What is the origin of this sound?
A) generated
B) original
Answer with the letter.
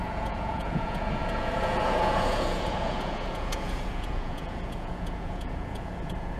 A